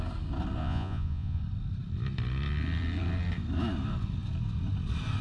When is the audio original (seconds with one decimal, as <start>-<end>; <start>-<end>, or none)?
0.0-0.6; 1.4-5.2